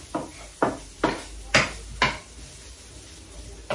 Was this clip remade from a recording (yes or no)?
no